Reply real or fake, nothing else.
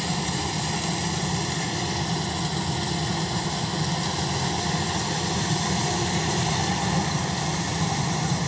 real